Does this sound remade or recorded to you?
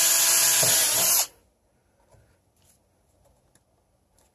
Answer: recorded